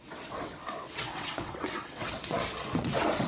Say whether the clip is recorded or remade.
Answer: remade